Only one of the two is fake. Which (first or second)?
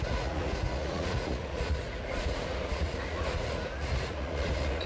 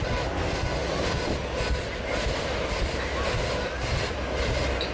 first